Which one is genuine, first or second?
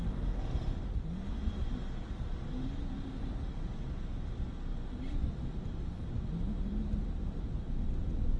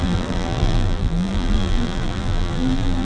first